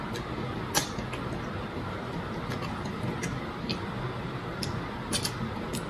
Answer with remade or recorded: recorded